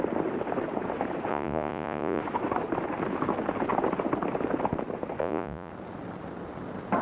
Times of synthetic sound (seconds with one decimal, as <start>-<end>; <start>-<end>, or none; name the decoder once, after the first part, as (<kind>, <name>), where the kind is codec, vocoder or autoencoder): 1.3-2.2 (vocoder, Vocos); 5.2-5.7

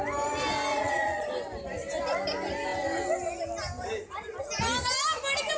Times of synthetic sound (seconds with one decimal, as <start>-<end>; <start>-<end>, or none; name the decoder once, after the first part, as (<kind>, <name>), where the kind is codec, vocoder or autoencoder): 0.7-1.3 (vocoder, Vocos)

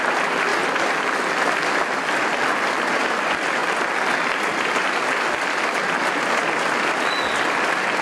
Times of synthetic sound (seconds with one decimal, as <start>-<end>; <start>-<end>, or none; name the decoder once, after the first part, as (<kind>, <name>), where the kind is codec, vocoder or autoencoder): none

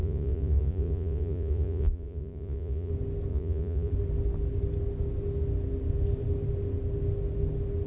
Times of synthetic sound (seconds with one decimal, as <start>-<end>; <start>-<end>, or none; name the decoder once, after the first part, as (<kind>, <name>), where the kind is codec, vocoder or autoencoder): 0.0-2.9 (vocoder, Vocos); 3.3-3.9

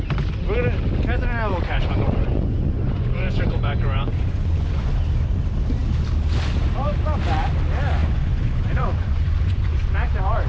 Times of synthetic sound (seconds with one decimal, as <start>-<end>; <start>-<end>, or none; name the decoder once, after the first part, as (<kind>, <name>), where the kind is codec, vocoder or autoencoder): 1.5-4.9 (vocoder, Vocos); 8.0-10.5

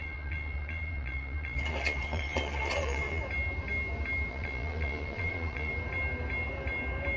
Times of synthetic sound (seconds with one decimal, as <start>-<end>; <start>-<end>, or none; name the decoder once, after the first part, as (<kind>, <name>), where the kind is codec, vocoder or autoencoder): 0.0-3.2 (vocoder, Vocos); 4.3-5.7